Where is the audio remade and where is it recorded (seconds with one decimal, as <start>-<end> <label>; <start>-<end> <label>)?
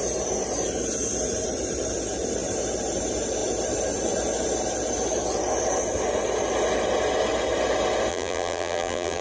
0.0-8.1 recorded; 8.1-9.2 remade